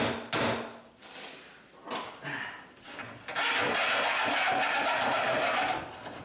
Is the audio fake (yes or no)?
no